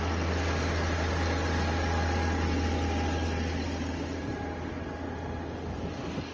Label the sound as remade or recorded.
recorded